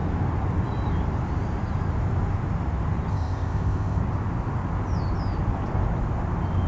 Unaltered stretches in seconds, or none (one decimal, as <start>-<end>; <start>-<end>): 0.0-3.1; 4.0-6.7